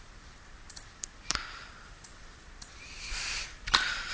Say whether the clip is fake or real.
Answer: fake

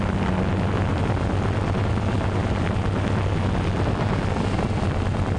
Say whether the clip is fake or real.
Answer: real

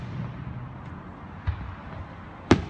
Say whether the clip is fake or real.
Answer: real